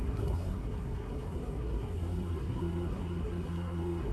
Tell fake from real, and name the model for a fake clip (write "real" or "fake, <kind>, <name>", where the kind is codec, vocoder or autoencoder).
fake, codec, SNAC